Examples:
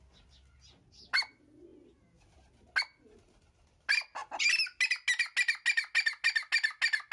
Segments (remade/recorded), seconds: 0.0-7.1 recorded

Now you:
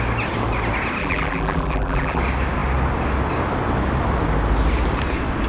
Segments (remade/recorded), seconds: 0.0-1.0 recorded; 1.0-2.2 remade; 2.2-5.5 recorded

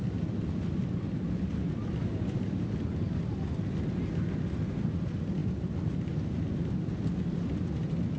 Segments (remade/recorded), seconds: 0.0-8.2 recorded

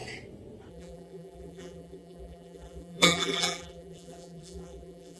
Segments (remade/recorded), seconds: 0.0-0.7 recorded; 0.7-5.2 remade